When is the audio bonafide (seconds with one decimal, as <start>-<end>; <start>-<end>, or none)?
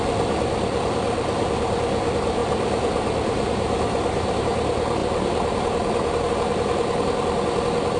0.0-8.0